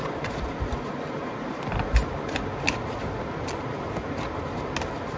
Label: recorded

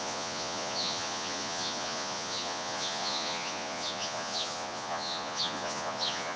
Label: remade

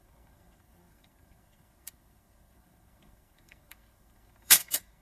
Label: remade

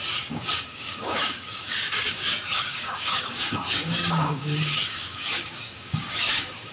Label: remade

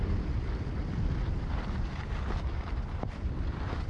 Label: recorded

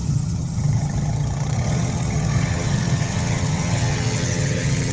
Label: remade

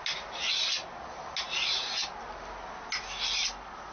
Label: recorded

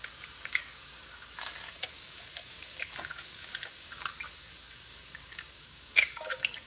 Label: remade